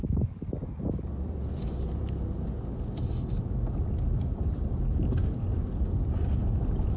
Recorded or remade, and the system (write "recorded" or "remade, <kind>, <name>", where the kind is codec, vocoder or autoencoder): remade, vocoder, BigVGAN v2